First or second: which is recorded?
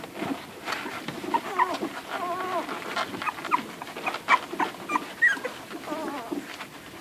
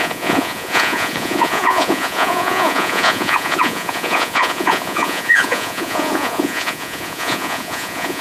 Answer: first